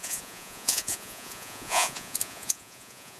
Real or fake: fake